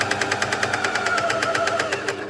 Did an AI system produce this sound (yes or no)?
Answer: no